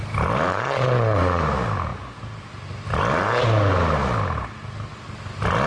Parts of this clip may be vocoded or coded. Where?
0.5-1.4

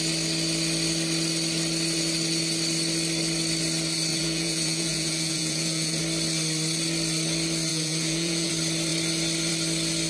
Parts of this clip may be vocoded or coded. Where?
4.1-6.0; 7.7-8.5

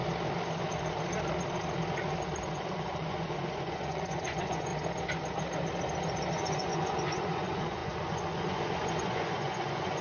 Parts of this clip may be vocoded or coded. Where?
2.5-4.7; 6.3-10.0

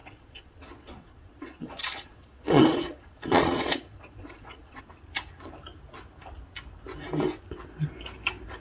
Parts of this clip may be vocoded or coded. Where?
0.0-4.8

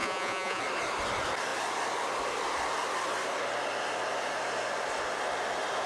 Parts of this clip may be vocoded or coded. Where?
0.0-0.6